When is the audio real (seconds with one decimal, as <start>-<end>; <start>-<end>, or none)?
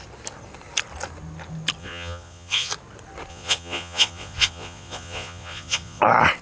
0.0-1.8; 2.7-3.3; 6.0-6.4